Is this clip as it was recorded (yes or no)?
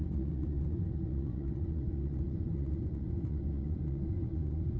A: no